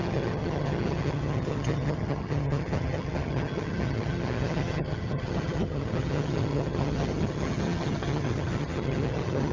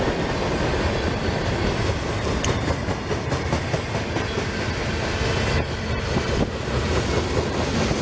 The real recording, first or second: second